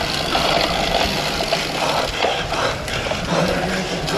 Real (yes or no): yes